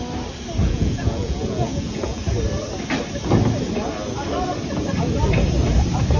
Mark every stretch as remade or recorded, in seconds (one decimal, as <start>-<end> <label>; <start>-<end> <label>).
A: 0.0-0.6 recorded; 0.6-2.2 remade; 2.2-6.2 recorded